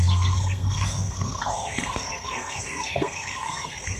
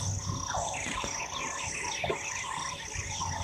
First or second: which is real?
second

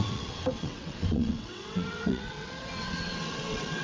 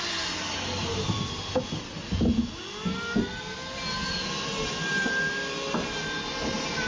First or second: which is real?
second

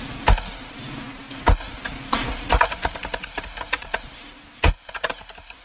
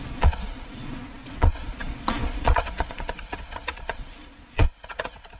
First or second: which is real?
first